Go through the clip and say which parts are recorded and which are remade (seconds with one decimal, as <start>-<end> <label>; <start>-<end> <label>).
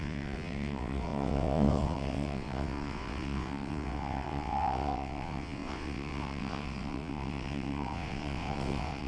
0.0-9.1 remade